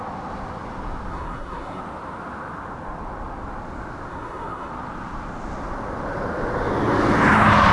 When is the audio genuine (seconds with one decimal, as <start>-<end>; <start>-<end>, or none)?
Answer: 0.0-1.1; 1.8-4.1; 4.7-7.7